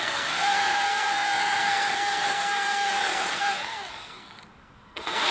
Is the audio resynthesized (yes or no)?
yes